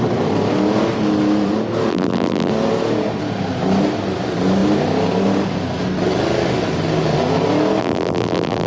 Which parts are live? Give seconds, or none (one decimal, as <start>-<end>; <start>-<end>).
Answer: 0.0-1.9; 2.5-7.8